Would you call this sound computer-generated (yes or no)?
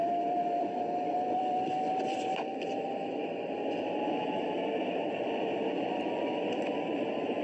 yes